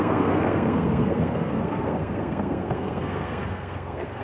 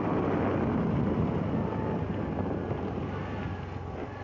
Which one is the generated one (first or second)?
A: first